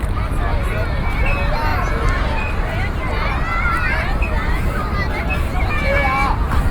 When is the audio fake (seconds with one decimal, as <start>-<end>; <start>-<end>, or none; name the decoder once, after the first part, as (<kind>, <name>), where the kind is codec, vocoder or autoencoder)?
1.7-5.7 (vocoder, BigVGAN v2)